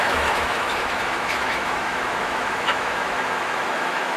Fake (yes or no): yes